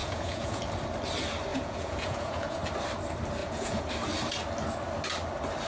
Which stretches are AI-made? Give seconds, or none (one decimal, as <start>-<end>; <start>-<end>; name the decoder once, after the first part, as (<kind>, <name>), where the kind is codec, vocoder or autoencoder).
0.0-0.6 (vocoder, Vocos); 1.5-2.6; 3.4-3.9